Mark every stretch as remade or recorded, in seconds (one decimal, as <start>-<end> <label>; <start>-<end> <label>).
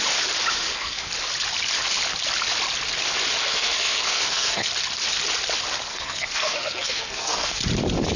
0.0-0.5 recorded; 0.5-1.1 remade; 1.1-3.4 recorded; 3.4-4.7 remade; 4.7-5.9 recorded; 5.9-7.6 remade; 7.6-8.2 recorded